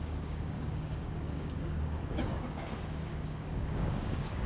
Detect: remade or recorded remade